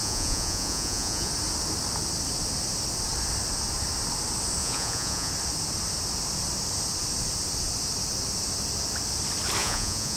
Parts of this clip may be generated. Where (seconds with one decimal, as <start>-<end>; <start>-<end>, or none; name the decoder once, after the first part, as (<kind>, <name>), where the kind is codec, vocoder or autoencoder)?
0.0-1.3 (vocoder, Vocos); 4.6-5.3; 9.6-10.2